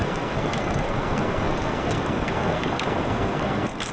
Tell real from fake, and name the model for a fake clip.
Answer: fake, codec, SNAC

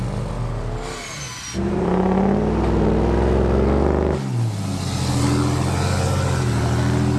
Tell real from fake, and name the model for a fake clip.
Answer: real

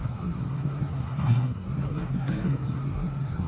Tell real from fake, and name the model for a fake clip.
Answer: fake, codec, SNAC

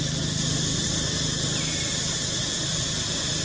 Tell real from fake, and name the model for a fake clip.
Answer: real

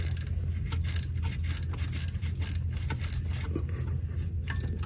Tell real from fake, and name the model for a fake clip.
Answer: real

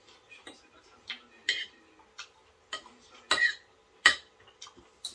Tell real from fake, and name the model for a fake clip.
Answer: real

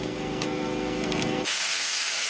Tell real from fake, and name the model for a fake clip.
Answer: fake, codec, SNAC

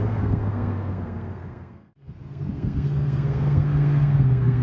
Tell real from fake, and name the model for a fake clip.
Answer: fake, codec, SNAC